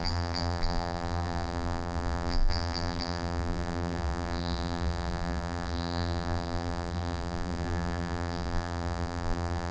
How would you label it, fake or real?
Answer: fake